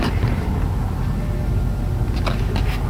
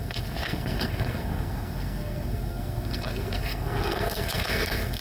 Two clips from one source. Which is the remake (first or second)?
second